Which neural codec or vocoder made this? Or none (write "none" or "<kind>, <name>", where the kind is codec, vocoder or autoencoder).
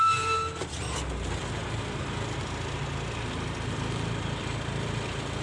none